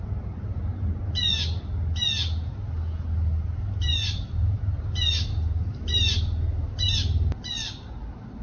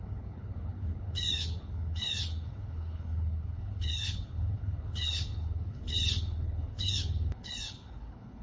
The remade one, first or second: second